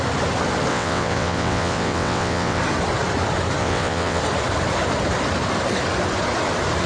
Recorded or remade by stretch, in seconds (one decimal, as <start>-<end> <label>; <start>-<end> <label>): 0.0-0.7 recorded; 0.7-2.6 remade; 2.6-3.6 recorded; 3.6-4.2 remade; 4.2-6.9 recorded